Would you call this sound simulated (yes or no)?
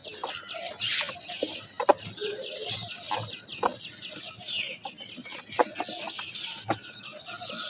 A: no